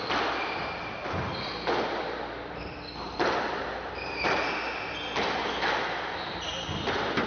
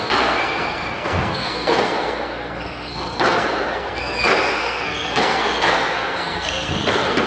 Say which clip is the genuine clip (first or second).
first